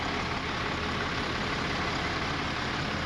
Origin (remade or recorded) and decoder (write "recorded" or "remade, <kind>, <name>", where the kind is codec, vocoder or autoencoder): recorded